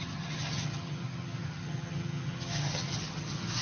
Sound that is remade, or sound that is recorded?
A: remade